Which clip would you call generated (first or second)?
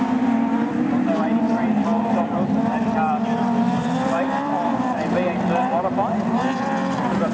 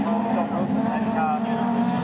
first